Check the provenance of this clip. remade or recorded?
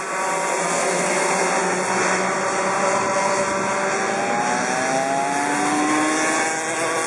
recorded